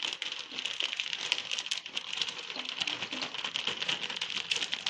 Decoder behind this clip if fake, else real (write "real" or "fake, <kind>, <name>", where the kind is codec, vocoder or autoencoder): real